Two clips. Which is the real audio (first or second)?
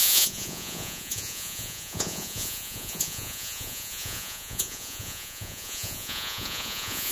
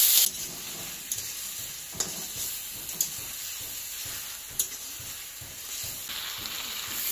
second